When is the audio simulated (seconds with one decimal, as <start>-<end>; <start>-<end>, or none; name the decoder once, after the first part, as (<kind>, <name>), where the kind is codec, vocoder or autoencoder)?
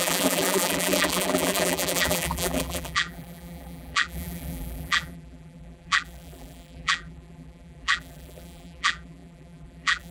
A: 0.0-10.1 (vocoder, BigVGAN v2)